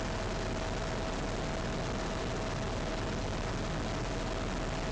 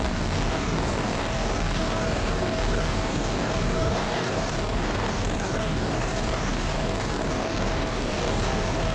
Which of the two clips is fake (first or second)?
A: second